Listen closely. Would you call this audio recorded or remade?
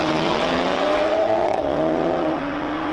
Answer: remade